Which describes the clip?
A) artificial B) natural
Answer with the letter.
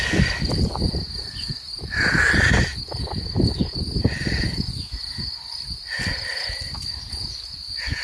B